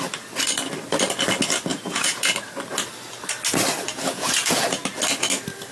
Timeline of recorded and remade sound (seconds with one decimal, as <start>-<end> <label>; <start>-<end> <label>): 0.0-1.7 recorded; 1.7-2.3 remade; 2.3-3.9 recorded; 3.9-4.8 remade; 4.8-5.7 recorded